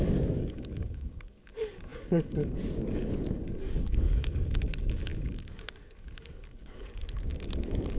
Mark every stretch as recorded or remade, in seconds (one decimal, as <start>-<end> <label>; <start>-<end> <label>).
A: 0.0-8.0 remade